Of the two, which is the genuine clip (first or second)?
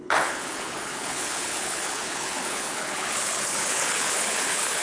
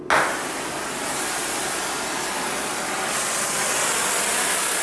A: second